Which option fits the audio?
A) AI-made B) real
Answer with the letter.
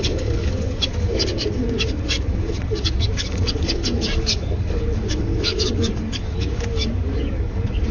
A